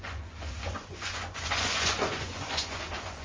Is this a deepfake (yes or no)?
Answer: yes